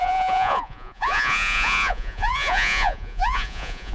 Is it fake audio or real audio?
fake